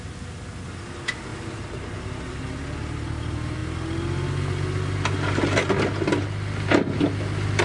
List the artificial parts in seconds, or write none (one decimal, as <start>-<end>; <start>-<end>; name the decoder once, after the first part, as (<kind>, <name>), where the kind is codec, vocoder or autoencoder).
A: none